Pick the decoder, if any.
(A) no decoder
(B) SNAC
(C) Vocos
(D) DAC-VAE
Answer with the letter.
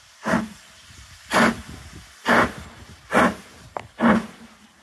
A